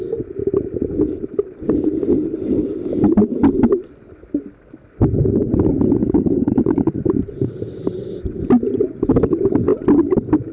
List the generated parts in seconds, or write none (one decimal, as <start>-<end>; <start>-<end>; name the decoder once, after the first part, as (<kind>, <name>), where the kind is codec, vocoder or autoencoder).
6.0-7.0 (codec, DAC)